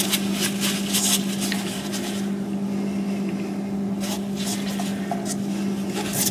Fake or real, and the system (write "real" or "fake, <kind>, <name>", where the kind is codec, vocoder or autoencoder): real